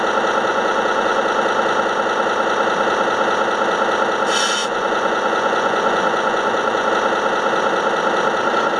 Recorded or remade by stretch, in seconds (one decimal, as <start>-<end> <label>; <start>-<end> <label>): 0.0-0.5 recorded; 0.5-1.2 remade; 1.2-4.6 recorded; 4.6-6.9 remade; 6.9-8.8 recorded